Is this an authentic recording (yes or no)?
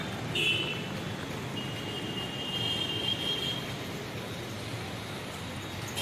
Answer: yes